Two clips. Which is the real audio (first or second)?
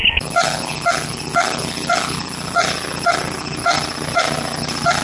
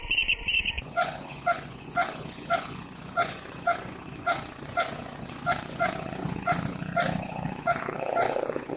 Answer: first